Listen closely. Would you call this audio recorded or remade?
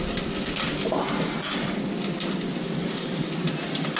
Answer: recorded